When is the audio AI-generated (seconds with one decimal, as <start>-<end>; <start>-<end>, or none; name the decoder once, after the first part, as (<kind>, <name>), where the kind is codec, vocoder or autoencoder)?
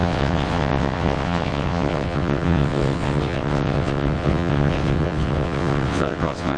0.0-6.6 (vocoder, WaveNeXt)